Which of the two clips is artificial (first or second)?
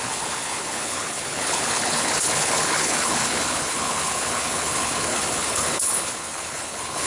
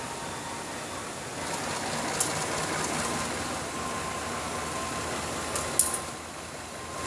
first